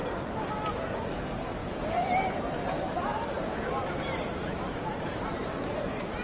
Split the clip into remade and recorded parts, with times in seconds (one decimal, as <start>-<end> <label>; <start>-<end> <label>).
0.0-1.1 recorded; 1.1-6.2 remade